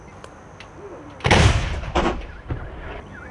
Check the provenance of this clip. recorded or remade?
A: recorded